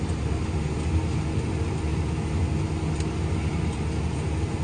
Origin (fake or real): real